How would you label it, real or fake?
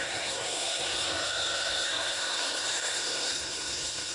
fake